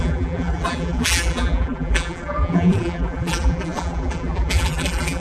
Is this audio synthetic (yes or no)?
yes